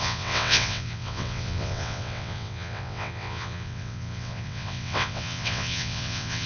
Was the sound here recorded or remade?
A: remade